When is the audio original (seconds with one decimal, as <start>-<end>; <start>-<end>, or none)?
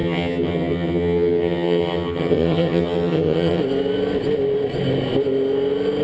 3.6-6.0